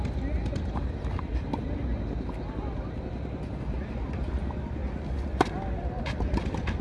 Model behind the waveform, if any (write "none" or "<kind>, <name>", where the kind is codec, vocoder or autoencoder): none